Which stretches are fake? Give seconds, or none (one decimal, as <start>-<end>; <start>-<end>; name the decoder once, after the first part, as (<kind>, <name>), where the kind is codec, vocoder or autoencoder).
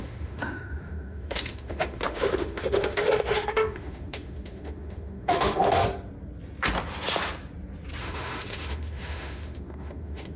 0.0-5.8 (autoencoder, DAC-VAE); 8.0-10.4